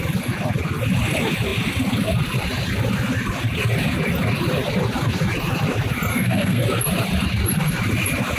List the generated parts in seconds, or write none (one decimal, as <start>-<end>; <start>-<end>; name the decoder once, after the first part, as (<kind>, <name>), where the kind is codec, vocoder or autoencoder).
6.1-6.6 (codec, SNAC)